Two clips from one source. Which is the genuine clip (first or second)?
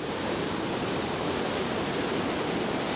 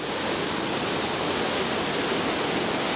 second